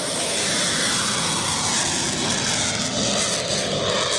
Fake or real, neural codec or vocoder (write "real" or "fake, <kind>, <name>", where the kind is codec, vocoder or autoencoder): real